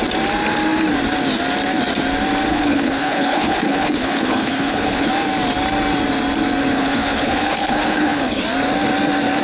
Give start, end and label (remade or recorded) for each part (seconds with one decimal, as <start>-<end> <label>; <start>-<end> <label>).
0.0-2.5 recorded; 2.5-5.1 remade; 5.1-6.7 recorded; 6.7-8.4 remade; 8.4-9.4 recorded